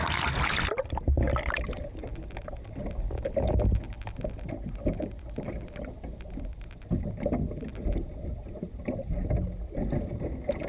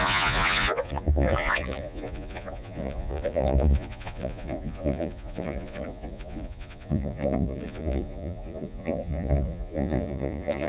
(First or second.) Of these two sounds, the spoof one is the second